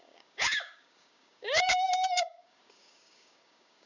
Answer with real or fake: fake